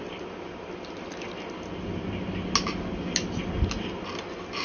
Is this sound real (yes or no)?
yes